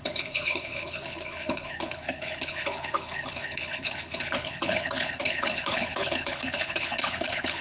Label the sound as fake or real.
fake